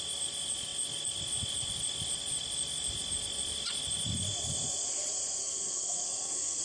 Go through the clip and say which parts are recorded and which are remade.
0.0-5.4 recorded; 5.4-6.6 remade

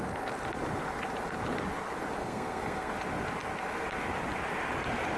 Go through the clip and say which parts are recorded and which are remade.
0.0-2.2 recorded; 2.2-2.9 remade; 2.9-5.2 recorded

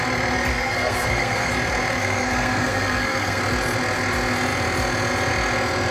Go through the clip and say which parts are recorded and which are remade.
0.0-0.5 recorded; 0.5-1.5 remade; 1.5-2.0 recorded; 2.0-3.4 remade; 3.4-5.9 recorded

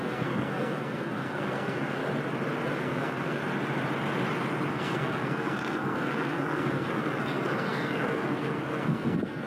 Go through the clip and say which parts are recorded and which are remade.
0.0-2.0 remade; 2.0-2.8 recorded; 2.8-3.4 remade; 3.4-4.7 recorded; 4.7-9.5 remade

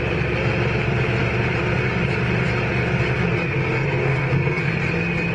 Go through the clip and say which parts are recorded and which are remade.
0.0-4.0 recorded; 4.0-4.7 remade; 4.7-5.3 recorded

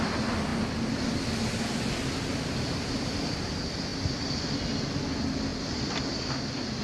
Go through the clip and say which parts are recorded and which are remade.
0.0-6.8 recorded

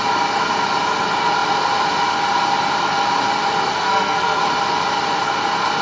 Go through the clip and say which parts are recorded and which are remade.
0.0-3.7 recorded; 3.7-4.4 remade; 4.4-5.8 recorded

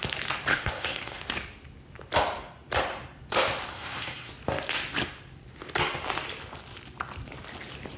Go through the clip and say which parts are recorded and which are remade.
0.0-0.5 recorded; 0.5-1.2 remade; 1.2-3.7 recorded; 3.7-4.3 remade; 4.3-8.0 recorded